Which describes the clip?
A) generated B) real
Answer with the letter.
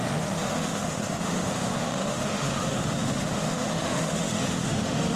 A